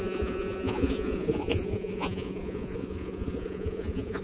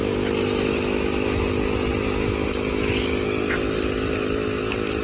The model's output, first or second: first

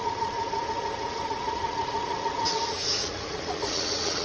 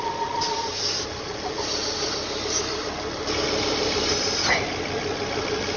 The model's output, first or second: first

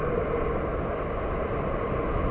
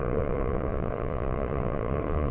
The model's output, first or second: second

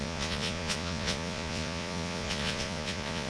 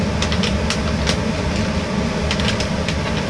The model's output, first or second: first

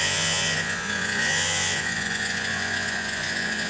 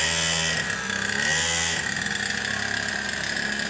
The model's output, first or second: first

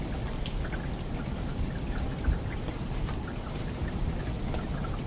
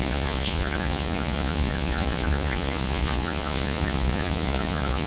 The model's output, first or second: second